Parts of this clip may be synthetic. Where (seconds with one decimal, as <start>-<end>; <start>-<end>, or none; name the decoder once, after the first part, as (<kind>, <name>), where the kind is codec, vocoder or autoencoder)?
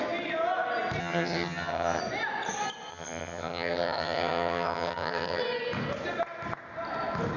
1.0-2.0 (vocoder, HiFi-GAN); 2.9-5.4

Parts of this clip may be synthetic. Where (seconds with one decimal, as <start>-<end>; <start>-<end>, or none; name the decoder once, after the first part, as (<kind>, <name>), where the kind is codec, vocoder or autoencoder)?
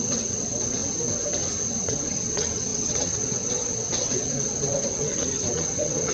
0.0-0.8 (vocoder, WaveNeXt); 1.8-6.1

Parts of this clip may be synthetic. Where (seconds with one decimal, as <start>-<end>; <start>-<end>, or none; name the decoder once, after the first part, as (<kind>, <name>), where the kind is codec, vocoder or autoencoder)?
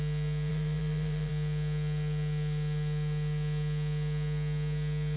0.5-1.3 (vocoder, BigVGAN v2)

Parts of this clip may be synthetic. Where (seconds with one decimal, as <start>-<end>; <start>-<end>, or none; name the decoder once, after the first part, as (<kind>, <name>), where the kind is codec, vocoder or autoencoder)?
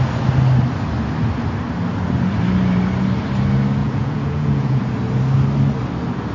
3.8-4.8 (vocoder, Vocos)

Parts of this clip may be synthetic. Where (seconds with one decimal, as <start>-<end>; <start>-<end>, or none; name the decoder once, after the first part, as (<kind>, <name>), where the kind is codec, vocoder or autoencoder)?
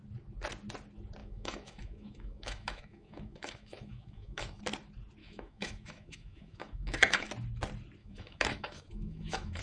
1.2-4.6 (autoencoder, DAC-VAE); 5.2-7.3; 8.0-9.6